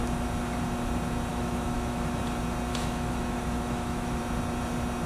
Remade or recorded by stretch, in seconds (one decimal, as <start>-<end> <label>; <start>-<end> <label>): 0.0-1.3 recorded; 1.3-2.2 remade; 2.2-2.7 recorded; 2.7-4.2 remade; 4.2-5.1 recorded